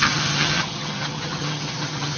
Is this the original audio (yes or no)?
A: no